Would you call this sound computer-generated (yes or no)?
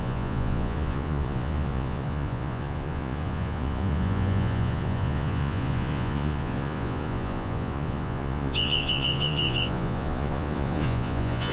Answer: yes